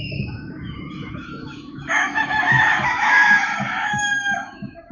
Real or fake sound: fake